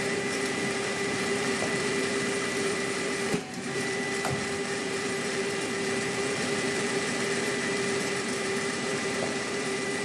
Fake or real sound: fake